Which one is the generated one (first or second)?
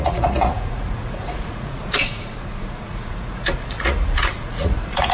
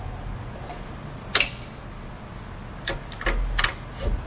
first